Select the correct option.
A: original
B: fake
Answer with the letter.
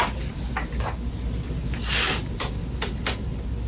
A